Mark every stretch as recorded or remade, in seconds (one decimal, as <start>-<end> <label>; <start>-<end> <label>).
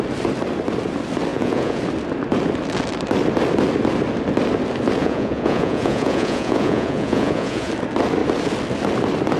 0.0-1.3 recorded; 1.3-1.8 remade; 1.8-5.0 recorded; 5.0-7.7 remade; 7.7-9.4 recorded